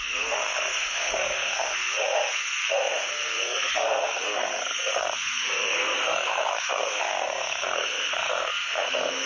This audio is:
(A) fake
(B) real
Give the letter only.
A